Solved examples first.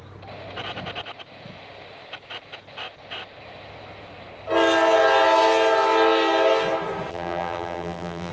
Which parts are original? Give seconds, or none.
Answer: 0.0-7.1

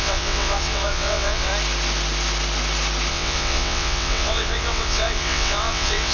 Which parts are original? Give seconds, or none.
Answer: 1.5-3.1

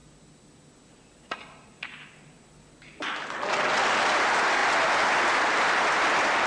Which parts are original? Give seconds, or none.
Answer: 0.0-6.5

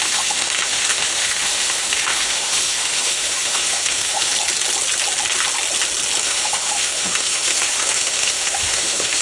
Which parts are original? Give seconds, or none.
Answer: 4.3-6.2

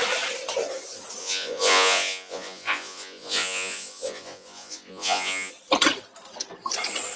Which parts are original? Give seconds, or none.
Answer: 0.0-1.2; 5.5-7.2

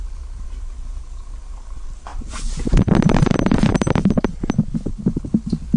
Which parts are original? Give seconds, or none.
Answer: none